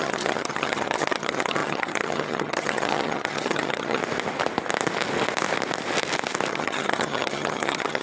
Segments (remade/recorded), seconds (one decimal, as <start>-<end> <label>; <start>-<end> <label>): 0.0-4.0 remade; 4.0-6.5 recorded; 6.5-8.0 remade